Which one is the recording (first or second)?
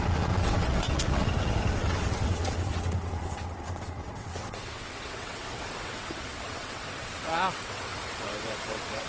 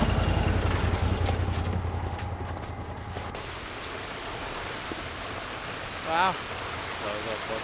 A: second